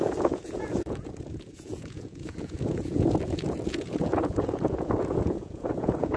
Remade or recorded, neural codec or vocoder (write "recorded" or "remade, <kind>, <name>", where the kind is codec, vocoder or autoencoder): remade, vocoder, Vocos